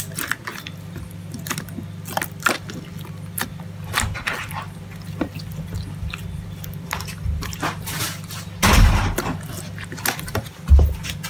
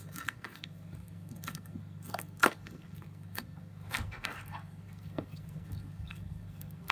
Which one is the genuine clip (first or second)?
first